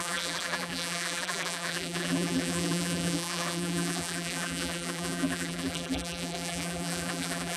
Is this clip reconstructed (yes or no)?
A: yes